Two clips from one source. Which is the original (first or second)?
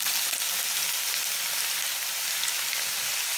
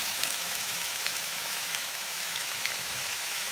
first